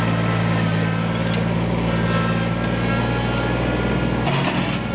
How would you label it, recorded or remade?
recorded